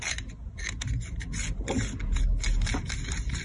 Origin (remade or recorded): recorded